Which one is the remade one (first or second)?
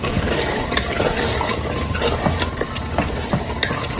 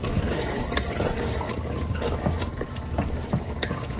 first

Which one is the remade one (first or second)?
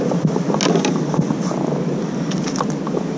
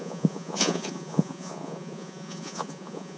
second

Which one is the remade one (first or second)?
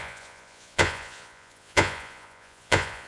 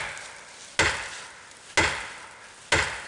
first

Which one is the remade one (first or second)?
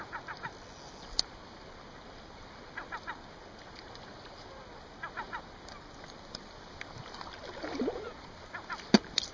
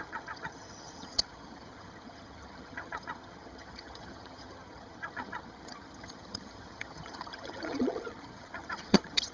second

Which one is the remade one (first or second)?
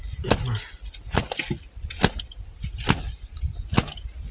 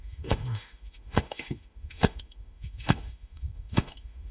second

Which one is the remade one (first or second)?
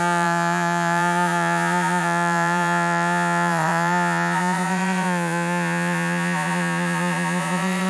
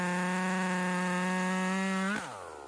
first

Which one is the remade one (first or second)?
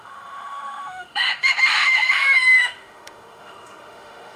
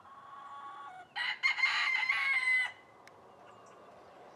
first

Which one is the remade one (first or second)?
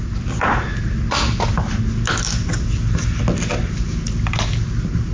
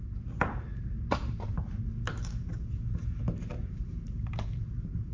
second